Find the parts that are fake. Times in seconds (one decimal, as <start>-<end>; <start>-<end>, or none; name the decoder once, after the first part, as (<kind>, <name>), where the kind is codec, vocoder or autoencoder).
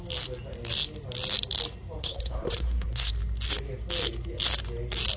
2.0-3.1 (codec, SNAC)